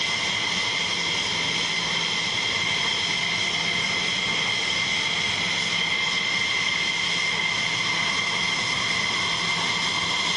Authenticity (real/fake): real